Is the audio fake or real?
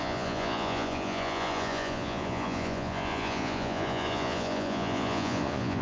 fake